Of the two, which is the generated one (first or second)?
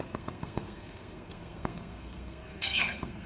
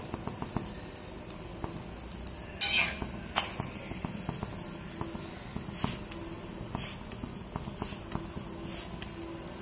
first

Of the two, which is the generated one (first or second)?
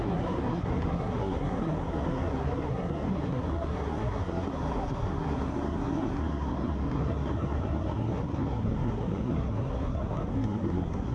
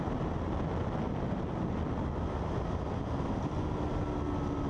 first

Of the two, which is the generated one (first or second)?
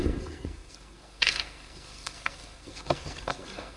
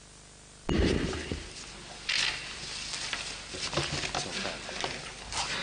first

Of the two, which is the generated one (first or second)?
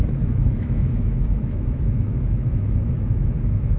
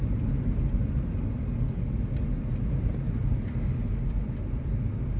first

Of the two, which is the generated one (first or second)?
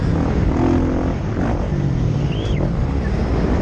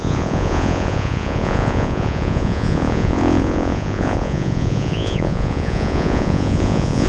second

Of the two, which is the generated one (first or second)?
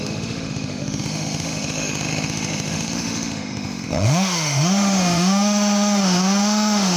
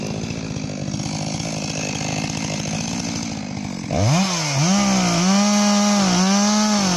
first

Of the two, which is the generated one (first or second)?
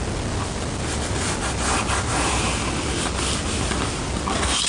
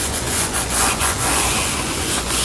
second